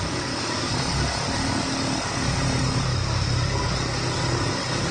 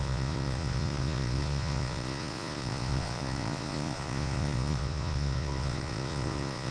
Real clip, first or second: first